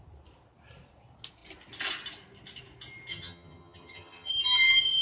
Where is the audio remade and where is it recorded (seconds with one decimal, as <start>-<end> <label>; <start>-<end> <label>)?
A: 0.0-3.1 recorded; 3.1-4.3 remade; 4.3-5.0 recorded